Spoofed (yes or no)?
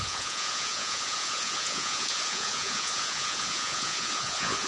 yes